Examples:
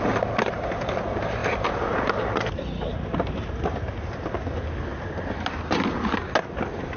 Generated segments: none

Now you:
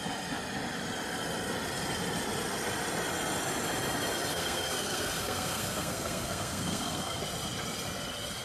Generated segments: 4.3-7.2 (codec, SNAC)

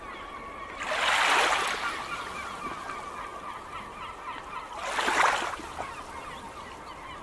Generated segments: none

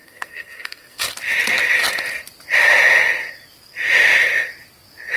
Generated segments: 0.0-1.1 (codec, SNAC)

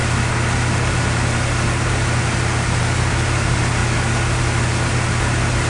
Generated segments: none